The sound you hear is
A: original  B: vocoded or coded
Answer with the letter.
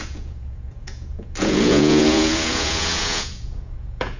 B